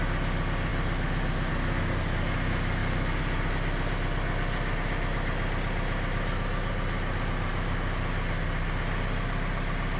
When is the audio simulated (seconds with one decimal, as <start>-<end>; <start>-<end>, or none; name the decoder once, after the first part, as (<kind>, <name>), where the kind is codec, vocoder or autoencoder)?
none